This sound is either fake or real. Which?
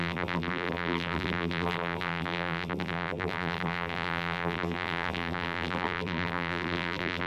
fake